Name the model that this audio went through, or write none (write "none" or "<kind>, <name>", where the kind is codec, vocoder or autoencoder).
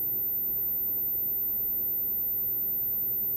none